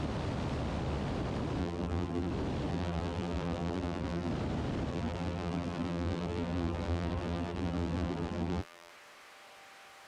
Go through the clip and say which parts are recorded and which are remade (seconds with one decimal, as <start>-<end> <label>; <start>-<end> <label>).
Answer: 0.0-1.6 recorded; 1.6-2.3 remade; 2.3-2.7 recorded; 2.7-4.3 remade; 4.3-4.9 recorded; 4.9-8.9 remade; 8.9-10.1 recorded